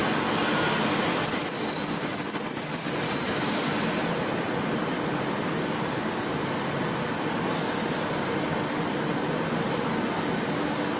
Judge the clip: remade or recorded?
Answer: recorded